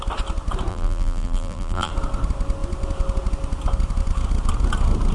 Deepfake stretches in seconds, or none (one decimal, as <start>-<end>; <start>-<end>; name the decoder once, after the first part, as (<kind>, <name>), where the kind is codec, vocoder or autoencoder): 0.7-1.9 (vocoder, BigVGAN v2)